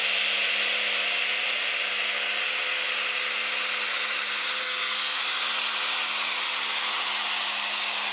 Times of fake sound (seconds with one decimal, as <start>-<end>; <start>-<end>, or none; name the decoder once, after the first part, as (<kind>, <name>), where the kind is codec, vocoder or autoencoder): 4.6-5.2 (codec, SNAC)